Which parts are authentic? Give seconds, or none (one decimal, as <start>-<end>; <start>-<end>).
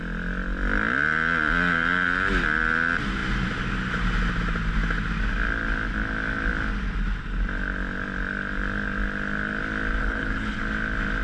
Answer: 0.0-10.0; 10.6-11.2